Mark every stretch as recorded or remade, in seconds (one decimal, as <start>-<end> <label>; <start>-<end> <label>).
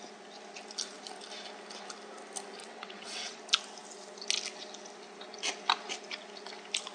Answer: 0.0-2.6 recorded; 2.6-3.4 remade; 3.4-6.9 recorded